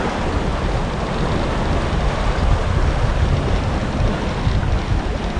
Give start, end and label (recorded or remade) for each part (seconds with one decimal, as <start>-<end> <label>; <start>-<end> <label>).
0.0-5.4 recorded